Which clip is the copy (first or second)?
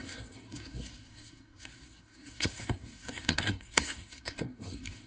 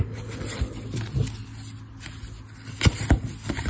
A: first